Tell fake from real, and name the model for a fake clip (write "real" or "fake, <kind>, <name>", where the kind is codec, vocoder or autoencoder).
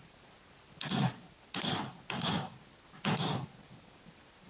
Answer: real